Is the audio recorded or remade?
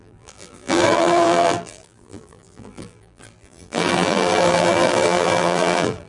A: remade